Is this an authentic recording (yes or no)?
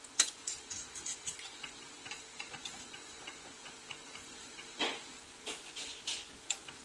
no